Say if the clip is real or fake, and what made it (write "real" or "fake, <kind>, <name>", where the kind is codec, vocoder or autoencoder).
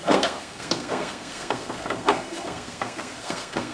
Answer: fake, codec, SNAC